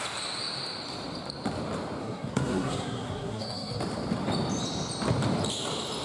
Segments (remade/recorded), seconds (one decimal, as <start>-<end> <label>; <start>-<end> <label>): 0.0-2.0 recorded; 2.0-3.8 remade; 3.8-6.0 recorded

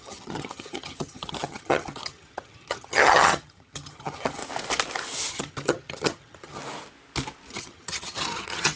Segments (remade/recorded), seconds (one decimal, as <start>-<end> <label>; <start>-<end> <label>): 0.0-4.4 remade; 4.4-5.3 recorded; 5.3-6.6 remade; 6.6-7.5 recorded; 7.5-8.8 remade

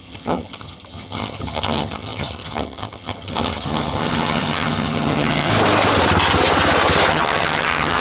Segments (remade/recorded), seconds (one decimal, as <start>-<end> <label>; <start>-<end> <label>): 0.0-5.5 remade; 5.5-7.1 recorded; 7.1-8.0 remade

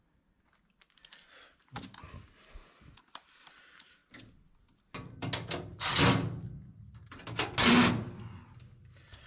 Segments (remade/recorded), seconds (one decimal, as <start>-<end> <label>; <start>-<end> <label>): 0.0-9.3 recorded

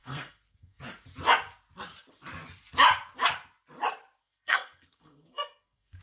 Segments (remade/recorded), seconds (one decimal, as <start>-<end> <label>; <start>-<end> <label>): 0.0-0.8 remade; 0.8-4.2 recorded; 4.2-6.0 remade

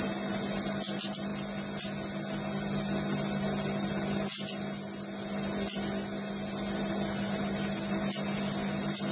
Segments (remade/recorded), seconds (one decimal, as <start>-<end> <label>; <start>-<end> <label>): 0.0-9.1 recorded

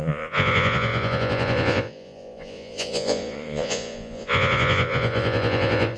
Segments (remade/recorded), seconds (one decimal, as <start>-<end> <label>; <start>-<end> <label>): 0.0-6.0 remade

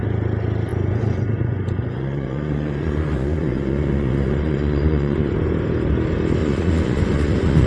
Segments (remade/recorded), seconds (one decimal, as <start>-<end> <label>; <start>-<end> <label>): 0.0-0.7 recorded; 0.7-5.3 remade; 5.3-6.4 recorded; 6.4-7.7 remade